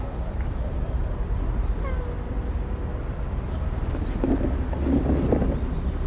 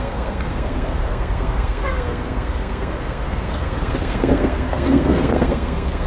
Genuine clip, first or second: first